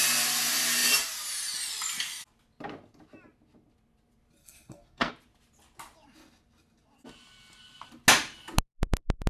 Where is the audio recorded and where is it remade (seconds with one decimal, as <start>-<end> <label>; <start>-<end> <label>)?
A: 0.0-4.4 recorded; 4.4-5.1 remade; 5.1-9.3 recorded